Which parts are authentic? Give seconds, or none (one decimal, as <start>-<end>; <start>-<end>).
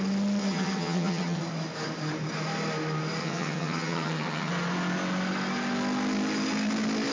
0.0-0.4; 1.4-3.2; 4.5-7.1